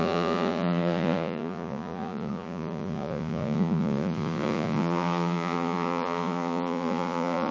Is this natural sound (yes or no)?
no